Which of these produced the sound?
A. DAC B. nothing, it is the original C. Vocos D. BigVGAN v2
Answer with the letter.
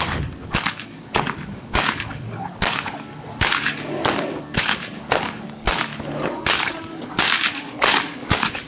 A